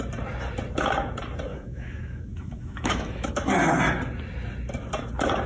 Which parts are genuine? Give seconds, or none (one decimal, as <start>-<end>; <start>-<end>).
0.0-1.5; 3.3-5.5